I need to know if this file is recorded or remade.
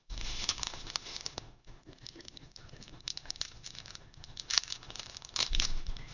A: remade